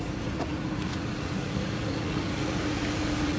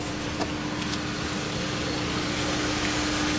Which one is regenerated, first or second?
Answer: first